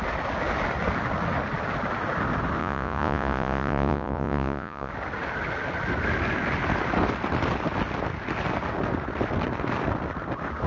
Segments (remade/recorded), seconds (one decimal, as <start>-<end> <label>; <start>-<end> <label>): 0.0-2.6 recorded; 2.6-4.9 remade; 4.9-10.7 recorded